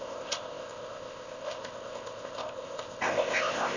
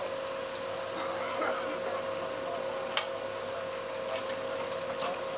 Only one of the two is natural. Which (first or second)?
second